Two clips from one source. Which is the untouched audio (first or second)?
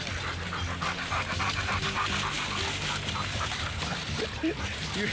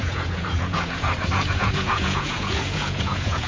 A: first